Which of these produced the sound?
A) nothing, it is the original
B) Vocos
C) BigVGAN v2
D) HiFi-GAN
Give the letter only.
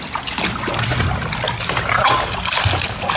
A